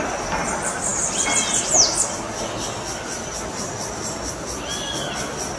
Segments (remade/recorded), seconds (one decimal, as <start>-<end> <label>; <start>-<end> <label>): 0.0-5.6 recorded